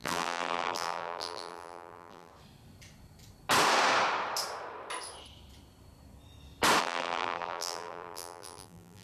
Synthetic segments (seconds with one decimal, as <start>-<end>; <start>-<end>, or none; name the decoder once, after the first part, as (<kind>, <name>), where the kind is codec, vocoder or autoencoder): 0.0-2.3 (vocoder, BigVGAN v2); 6.8-9.0